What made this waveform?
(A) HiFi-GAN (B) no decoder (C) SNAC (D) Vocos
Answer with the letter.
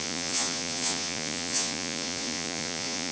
D